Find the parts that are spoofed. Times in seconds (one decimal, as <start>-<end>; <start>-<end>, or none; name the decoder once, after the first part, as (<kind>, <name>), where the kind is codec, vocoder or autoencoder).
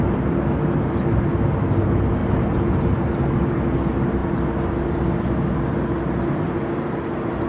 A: 2.2-3.2 (vocoder, BigVGAN v2)